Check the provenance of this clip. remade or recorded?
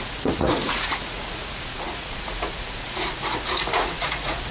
remade